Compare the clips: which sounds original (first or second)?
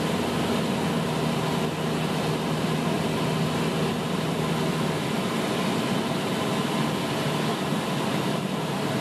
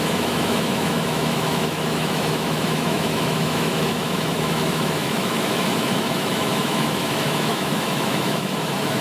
first